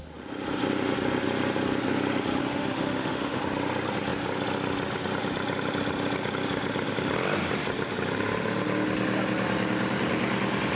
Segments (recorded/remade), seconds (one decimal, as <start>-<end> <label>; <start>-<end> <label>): 0.0-2.4 recorded; 2.4-3.4 remade; 3.4-10.8 recorded